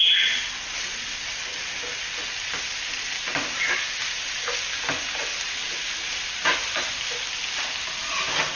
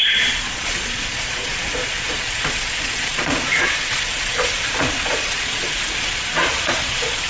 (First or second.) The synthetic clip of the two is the second